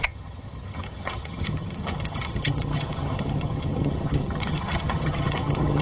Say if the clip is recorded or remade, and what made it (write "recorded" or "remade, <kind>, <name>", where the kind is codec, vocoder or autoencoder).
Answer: remade, vocoder, HiFi-GAN